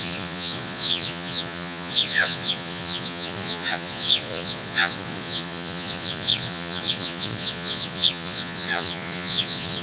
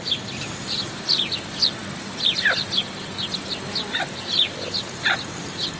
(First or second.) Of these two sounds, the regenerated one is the first